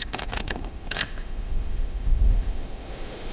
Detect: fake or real fake